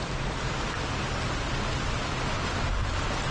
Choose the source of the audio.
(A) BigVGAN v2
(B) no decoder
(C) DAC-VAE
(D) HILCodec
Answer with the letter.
B